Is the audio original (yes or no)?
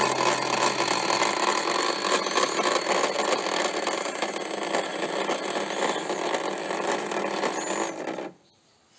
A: yes